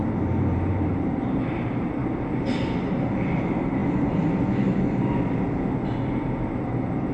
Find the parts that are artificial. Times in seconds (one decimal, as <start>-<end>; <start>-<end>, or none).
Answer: 0.0-3.8; 5.3-7.1